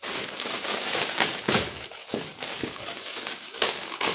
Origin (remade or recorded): remade